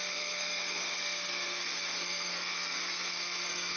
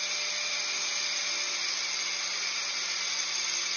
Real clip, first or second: second